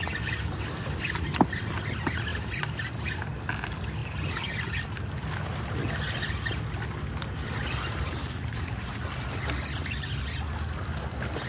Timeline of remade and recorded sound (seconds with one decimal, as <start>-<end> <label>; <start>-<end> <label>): 0.0-8.2 recorded; 8.2-9.0 remade; 9.0-11.5 recorded